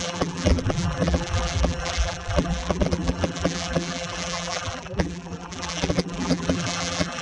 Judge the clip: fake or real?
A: fake